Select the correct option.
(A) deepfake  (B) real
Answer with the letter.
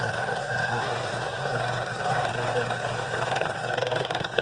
A